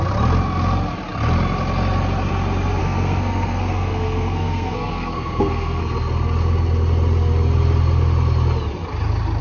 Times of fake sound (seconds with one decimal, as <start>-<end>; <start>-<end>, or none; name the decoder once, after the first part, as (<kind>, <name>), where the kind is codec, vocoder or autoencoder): 2.8-5.8 (codec, SNAC)